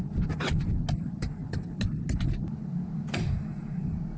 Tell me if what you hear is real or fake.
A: real